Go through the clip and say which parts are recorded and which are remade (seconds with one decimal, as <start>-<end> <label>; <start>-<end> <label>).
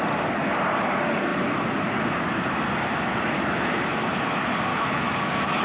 0.0-4.7 recorded; 4.7-5.6 remade